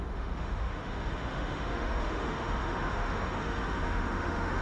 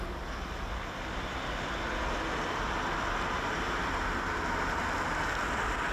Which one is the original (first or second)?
second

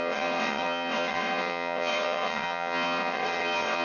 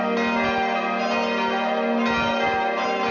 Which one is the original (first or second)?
second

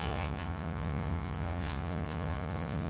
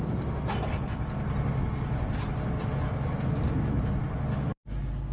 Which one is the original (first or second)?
second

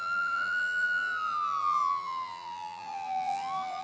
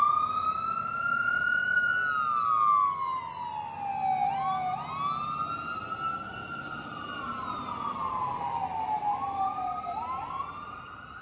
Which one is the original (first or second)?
second